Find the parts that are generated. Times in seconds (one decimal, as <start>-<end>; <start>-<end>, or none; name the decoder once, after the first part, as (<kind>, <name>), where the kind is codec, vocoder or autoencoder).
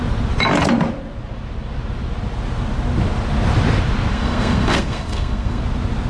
4.1-5.6 (codec, SNAC)